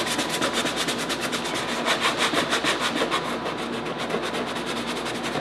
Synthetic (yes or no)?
no